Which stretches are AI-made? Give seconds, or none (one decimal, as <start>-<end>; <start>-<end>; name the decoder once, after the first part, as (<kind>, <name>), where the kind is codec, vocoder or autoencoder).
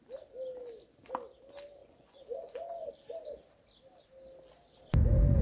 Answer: 1.8-2.9 (vocoder, Vocos)